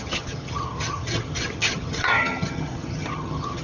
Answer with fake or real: fake